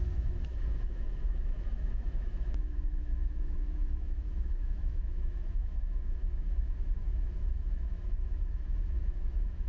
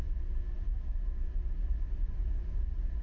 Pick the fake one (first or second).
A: first